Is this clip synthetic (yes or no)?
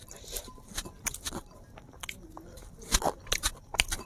no